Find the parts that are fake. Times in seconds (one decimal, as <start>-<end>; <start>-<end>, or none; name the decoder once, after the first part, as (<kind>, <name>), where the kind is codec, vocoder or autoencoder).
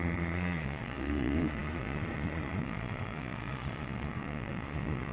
0.0-5.1 (vocoder, Vocos)